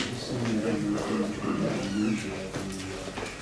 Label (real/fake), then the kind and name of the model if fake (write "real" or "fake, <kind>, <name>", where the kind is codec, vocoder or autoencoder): real